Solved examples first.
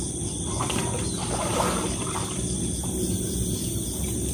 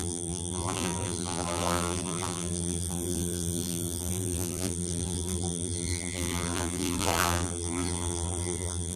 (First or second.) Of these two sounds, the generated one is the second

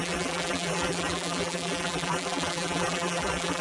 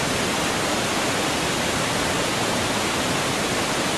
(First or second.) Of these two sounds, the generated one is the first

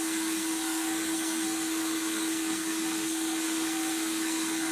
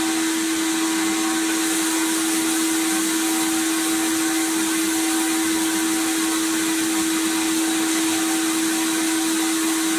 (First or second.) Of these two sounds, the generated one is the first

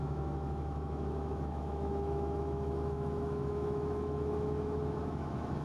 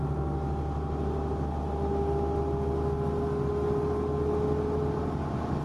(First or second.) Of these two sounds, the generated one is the first